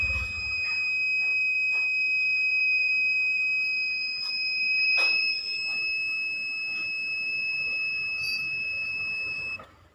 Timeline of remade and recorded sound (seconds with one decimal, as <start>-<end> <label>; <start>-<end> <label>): 0.0-9.9 remade

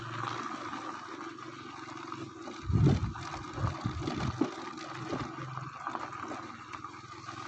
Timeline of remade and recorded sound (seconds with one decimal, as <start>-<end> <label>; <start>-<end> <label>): 0.0-7.5 recorded

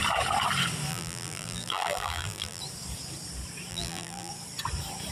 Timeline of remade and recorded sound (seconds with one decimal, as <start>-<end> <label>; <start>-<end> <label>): 0.0-0.9 recorded; 0.9-2.6 remade; 2.6-3.7 recorded; 3.7-4.3 remade; 4.3-5.1 recorded